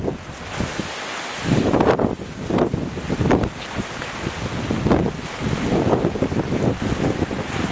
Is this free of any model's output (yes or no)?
yes